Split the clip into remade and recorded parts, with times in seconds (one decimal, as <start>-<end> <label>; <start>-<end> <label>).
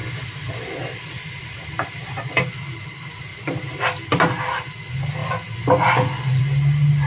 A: 0.0-7.1 recorded